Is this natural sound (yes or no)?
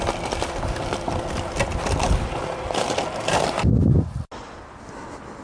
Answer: yes